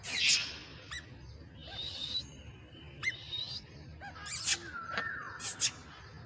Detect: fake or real real